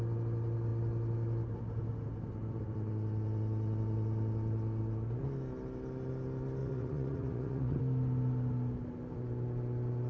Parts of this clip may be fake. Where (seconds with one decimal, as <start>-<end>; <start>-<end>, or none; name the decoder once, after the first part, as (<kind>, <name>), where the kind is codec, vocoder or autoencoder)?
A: 6.6-7.8 (vocoder, Vocos)